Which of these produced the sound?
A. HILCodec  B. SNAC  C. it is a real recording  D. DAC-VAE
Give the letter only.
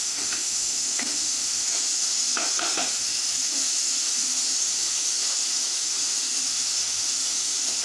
D